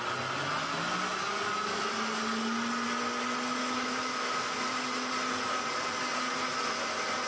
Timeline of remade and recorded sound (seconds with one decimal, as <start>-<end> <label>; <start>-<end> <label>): 0.0-3.6 recorded; 3.6-4.6 remade; 4.6-7.3 recorded